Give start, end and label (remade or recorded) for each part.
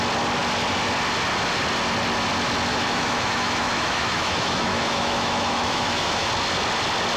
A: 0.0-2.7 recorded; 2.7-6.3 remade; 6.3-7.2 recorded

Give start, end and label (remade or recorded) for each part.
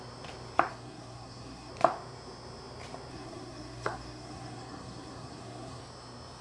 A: 0.0-0.7 recorded; 0.7-1.7 remade; 1.7-3.1 recorded; 3.1-5.8 remade; 5.8-6.4 recorded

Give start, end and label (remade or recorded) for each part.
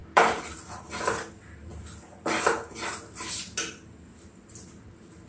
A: 0.0-0.6 remade; 0.6-5.3 recorded